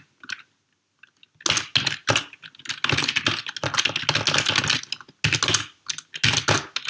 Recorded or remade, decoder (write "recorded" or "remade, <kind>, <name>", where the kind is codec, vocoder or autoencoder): recorded